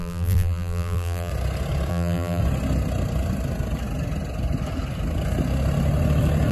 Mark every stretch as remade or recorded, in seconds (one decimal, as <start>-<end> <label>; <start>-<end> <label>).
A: 0.0-1.3 remade; 1.3-1.9 recorded; 1.9-2.4 remade; 2.4-6.5 recorded